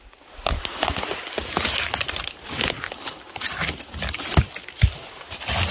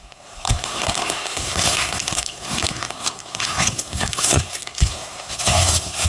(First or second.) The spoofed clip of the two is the second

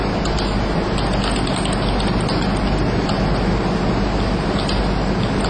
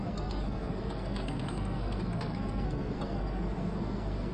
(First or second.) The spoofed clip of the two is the second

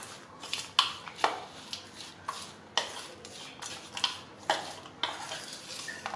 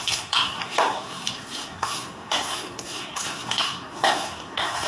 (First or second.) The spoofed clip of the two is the second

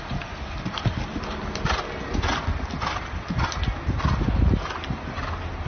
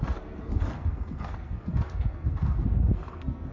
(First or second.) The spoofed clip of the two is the second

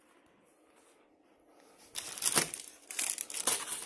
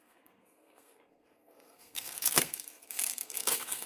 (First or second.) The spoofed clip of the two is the second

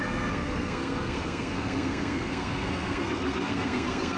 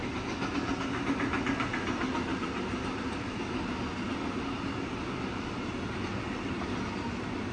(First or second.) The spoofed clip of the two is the first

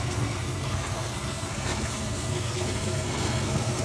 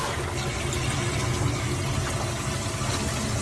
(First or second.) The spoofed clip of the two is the first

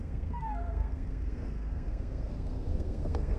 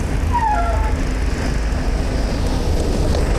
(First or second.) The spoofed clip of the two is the first